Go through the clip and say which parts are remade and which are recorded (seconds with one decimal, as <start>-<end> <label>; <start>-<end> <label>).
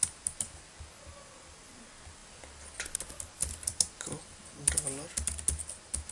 0.0-6.1 recorded